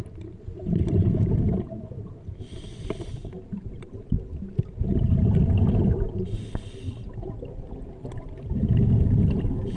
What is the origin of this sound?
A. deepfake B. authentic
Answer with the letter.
B